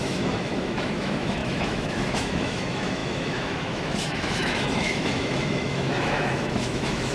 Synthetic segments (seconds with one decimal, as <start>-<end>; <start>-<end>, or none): 0.0-7.1